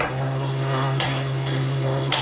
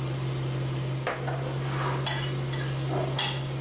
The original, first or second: second